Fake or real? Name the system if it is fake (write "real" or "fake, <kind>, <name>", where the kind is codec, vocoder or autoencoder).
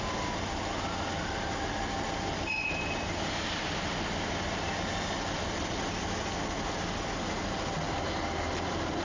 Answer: real